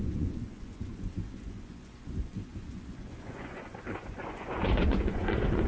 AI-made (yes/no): yes